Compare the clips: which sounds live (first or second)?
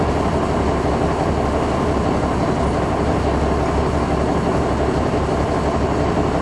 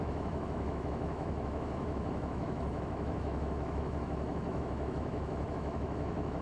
first